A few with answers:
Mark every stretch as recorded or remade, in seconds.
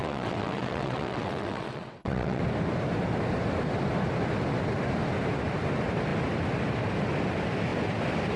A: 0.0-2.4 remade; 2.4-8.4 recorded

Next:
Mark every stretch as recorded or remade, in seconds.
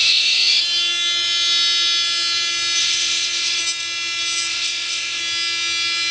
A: 0.0-0.6 remade; 0.6-2.8 recorded; 2.8-3.6 remade; 3.6-4.5 recorded; 4.5-5.2 remade; 5.2-6.1 recorded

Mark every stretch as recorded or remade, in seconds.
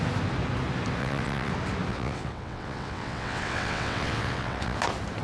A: 0.0-1.0 recorded; 1.0-1.5 remade; 1.5-1.9 recorded; 1.9-4.8 remade; 4.8-5.2 recorded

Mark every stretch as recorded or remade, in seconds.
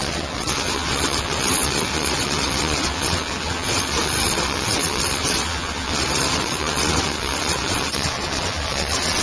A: 0.0-9.2 remade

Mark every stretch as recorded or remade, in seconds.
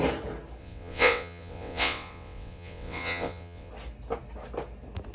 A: 0.0-0.6 recorded; 0.6-3.7 remade; 3.7-5.1 recorded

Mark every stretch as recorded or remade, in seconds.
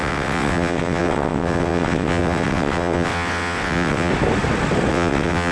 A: 0.0-4.1 remade; 4.1-4.9 recorded; 4.9-5.5 remade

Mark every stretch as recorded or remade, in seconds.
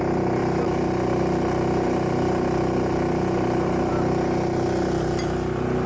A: 0.0-5.9 recorded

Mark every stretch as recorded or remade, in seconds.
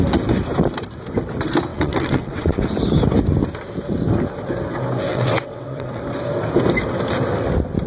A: 0.0-1.7 recorded; 1.7-2.6 remade; 2.6-5.1 recorded; 5.1-6.0 remade; 6.0-7.9 recorded